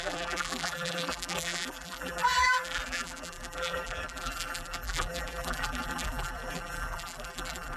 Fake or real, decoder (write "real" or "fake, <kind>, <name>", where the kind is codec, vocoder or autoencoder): fake, vocoder, BigVGAN v2